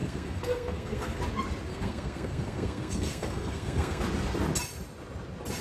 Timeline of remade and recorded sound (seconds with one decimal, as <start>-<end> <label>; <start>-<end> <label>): 0.0-1.2 remade; 1.2-1.7 recorded; 1.7-4.0 remade; 4.0-5.6 recorded